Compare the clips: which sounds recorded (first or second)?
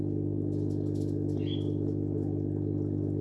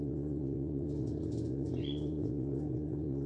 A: first